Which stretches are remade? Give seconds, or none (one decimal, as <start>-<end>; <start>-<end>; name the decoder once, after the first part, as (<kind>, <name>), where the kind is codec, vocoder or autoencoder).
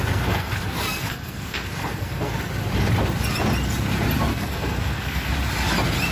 0.0-2.5 (codec, SNAC); 4.3-5.3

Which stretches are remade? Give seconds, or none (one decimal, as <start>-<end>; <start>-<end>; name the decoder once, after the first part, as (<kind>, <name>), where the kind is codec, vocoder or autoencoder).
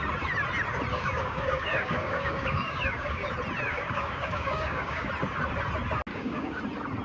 0.9-3.3 (codec, DAC); 3.7-5.1; 6.1-6.6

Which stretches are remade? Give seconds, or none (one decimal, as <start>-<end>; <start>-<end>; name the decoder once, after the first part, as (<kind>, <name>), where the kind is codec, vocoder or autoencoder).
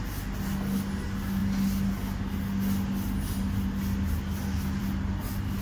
none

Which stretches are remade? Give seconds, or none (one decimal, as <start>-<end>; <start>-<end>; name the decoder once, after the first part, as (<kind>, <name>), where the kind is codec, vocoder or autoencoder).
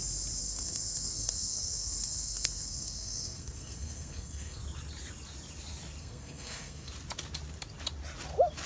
0.4-4.6 (codec, SNAC); 6.0-6.9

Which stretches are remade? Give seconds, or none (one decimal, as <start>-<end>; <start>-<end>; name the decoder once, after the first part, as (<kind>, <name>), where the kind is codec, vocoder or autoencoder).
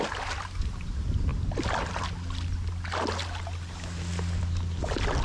none